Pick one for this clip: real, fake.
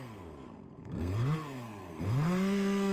fake